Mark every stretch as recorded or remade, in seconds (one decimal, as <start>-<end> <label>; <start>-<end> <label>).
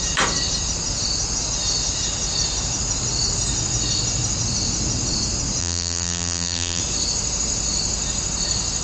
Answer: 0.0-5.6 recorded; 5.6-6.8 remade; 6.8-8.8 recorded